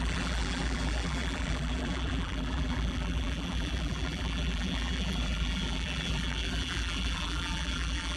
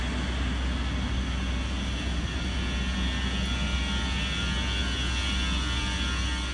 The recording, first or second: second